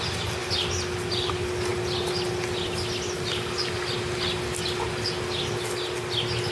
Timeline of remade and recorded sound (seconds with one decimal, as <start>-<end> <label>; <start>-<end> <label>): 0.0-6.5 recorded